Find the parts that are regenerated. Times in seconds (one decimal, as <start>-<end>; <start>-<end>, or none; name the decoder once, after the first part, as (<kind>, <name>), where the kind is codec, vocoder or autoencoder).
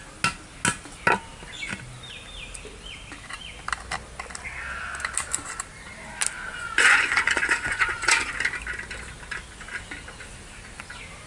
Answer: 6.5-8.3 (vocoder, Vocos)